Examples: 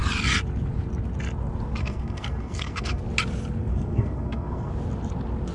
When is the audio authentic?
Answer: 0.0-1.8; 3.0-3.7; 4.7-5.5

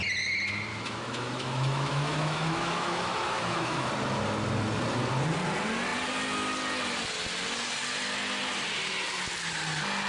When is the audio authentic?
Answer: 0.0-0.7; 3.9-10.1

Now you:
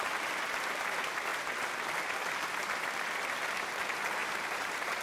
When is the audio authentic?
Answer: 0.0-4.2

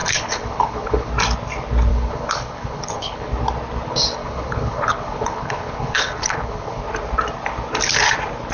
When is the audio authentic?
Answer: 1.1-1.9; 3.3-4.2; 6.8-8.5

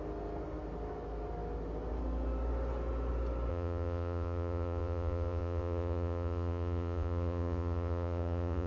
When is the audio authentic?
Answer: 0.0-3.5